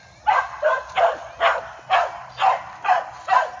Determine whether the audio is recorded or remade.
recorded